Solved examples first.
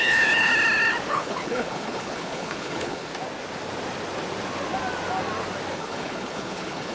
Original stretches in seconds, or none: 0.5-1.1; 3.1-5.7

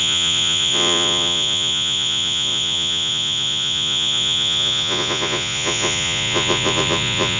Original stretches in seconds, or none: none

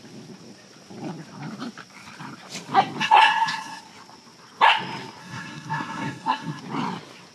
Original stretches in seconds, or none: 0.0-3.0; 3.8-5.2; 6.6-7.3

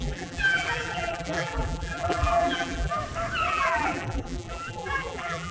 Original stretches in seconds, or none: 3.0-3.5